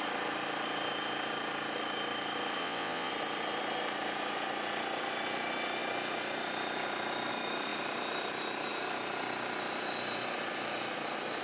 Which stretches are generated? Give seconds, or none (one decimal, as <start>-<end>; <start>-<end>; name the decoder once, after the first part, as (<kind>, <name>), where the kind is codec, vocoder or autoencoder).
2.6-3.1 (vocoder, WaveNeXt)

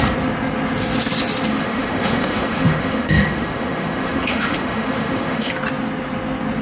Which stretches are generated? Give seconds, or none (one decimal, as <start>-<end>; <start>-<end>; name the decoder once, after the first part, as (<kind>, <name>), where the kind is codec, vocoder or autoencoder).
1.5-5.5 (autoencoder, DAC-VAE)

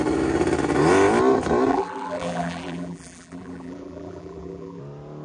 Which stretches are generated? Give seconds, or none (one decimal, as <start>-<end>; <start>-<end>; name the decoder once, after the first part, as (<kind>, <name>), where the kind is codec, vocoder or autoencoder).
1.7-4.8 (vocoder, BigVGAN v2)

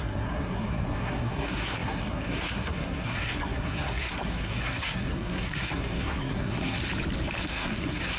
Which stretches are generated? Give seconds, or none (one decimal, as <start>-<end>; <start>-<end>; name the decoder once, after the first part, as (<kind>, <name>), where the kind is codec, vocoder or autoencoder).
0.0-6.8 (codec, SNAC); 7.4-8.2

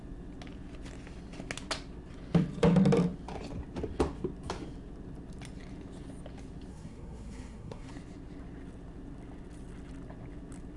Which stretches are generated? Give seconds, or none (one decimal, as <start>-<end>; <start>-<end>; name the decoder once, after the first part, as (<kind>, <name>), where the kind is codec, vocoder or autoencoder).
6.7-7.9 (codec, SNAC)